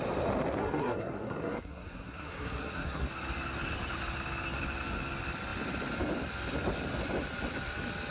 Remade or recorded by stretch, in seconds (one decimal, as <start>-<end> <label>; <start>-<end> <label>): 0.0-0.6 recorded; 0.6-3.1 remade; 3.1-8.1 recorded